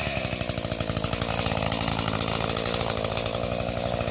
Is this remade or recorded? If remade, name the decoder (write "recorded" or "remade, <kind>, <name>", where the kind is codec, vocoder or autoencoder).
recorded